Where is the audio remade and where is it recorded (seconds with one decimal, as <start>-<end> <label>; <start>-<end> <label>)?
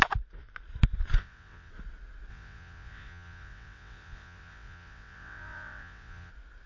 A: 0.0-1.2 recorded; 1.2-1.7 remade; 1.7-2.3 recorded; 2.3-6.3 remade; 6.3-6.7 recorded